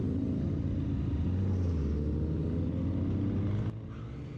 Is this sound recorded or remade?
recorded